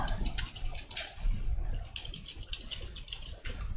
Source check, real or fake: real